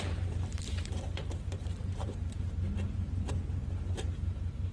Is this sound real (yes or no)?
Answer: no